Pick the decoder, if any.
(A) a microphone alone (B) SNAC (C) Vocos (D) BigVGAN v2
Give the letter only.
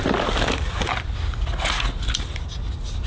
A